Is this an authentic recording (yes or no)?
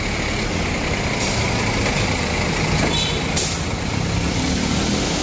yes